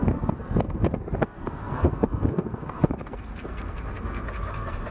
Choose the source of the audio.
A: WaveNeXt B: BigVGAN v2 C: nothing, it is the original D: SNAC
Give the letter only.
D